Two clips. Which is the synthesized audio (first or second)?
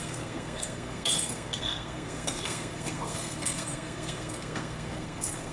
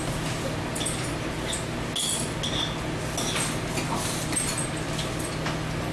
first